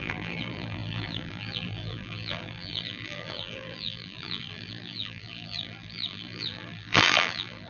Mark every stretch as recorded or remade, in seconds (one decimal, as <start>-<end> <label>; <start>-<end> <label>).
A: 0.0-7.7 remade